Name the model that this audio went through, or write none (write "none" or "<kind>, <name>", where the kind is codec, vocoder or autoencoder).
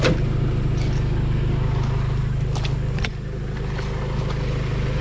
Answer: none